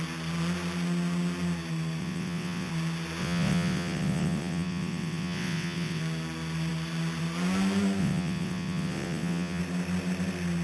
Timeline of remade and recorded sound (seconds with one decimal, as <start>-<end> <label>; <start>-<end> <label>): 0.0-2.0 recorded; 2.0-2.7 remade; 2.7-3.2 recorded; 3.2-6.0 remade; 6.0-8.0 recorded; 8.0-9.6 remade; 9.6-10.6 recorded